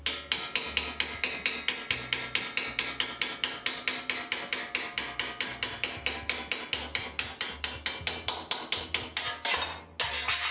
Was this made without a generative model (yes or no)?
yes